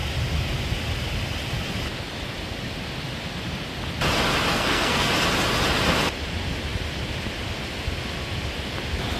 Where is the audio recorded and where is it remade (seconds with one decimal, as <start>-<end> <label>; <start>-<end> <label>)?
0.0-4.5 recorded; 4.5-5.1 remade; 5.1-9.2 recorded